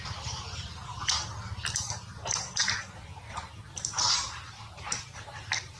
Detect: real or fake real